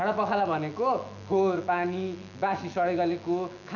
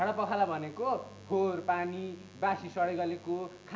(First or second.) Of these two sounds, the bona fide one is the second